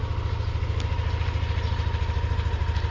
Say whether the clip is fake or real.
real